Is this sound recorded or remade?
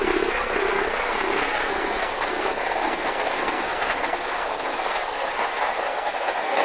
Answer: remade